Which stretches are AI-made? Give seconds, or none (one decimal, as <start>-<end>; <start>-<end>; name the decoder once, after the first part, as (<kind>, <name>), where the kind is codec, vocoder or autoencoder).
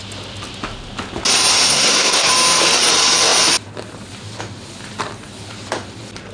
1.7-2.3 (codec, SNAC)